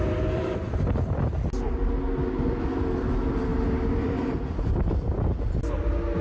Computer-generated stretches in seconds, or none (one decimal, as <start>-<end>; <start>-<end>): 3.5-4.6